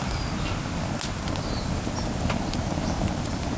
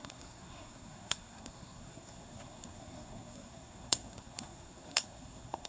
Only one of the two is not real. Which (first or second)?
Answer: second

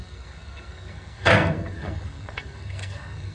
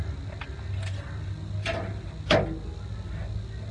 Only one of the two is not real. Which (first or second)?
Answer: first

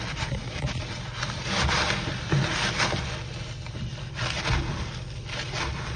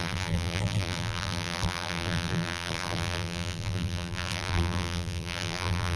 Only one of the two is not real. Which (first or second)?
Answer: second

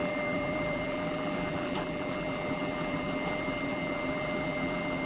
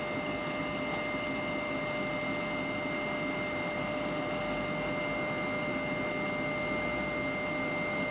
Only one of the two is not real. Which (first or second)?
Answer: first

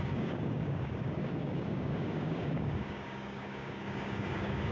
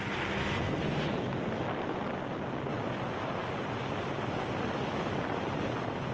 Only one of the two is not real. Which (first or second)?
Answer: first